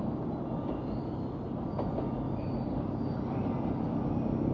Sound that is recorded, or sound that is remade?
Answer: recorded